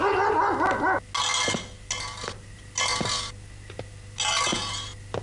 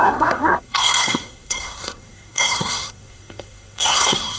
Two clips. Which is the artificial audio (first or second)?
second